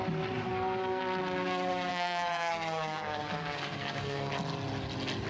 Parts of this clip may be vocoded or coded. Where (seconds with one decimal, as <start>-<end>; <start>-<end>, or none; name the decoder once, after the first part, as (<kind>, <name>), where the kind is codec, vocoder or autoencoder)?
0.5-1.0 (codec, SNAC); 1.9-4.3